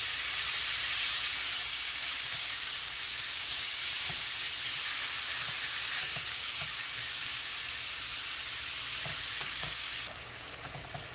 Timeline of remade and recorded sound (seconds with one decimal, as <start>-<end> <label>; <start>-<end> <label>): 0.0-1.7 recorded; 1.7-3.9 remade; 3.9-6.1 recorded; 6.1-7.5 remade; 7.5-9.4 recorded; 9.4-10.5 remade; 10.5-11.1 recorded